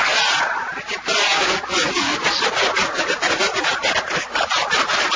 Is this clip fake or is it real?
real